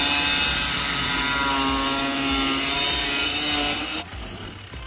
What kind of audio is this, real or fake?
real